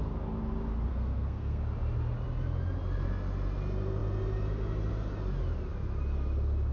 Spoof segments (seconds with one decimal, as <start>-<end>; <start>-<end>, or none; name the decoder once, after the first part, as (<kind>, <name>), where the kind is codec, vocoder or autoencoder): 0.9-1.6 (codec, SNAC)